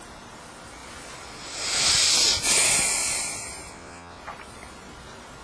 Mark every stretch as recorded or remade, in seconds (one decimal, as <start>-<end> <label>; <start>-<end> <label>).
0.0-3.7 recorded; 3.7-4.2 remade; 4.2-5.4 recorded